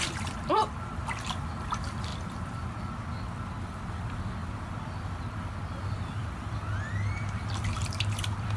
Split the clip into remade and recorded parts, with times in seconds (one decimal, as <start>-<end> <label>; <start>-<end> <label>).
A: 0.0-2.1 remade; 2.1-3.6 recorded; 3.6-4.4 remade; 4.4-5.8 recorded; 5.8-6.6 remade; 6.6-7.2 recorded; 7.2-8.6 remade